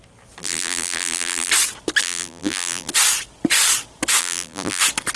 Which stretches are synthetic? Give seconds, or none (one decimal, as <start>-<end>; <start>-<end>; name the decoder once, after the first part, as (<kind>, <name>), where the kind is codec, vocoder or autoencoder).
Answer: 0.4-1.5 (vocoder, BigVGAN v2); 2.0-2.9; 4.2-4.8